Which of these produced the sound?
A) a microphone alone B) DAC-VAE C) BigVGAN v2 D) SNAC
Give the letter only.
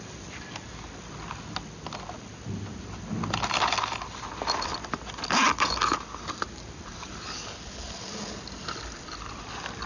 A